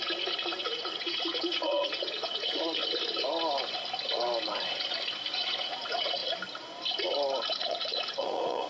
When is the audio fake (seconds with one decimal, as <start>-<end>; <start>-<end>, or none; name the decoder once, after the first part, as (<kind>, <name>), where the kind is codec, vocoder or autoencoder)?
0.0-2.8 (vocoder, Vocos); 5.3-6.2; 7.5-8.7